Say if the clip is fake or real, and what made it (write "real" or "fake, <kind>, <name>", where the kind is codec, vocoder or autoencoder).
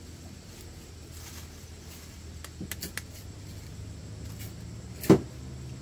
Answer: real